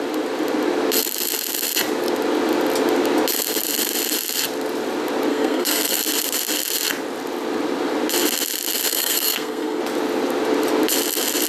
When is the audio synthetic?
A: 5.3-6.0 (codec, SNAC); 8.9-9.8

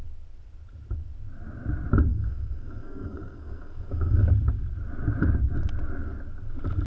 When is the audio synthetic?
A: 2.1-4.3 (codec, SNAC)

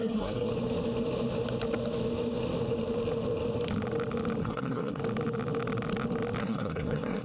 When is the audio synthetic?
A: 0.0-0.5 (codec, SNAC); 4.4-5.0; 6.4-7.2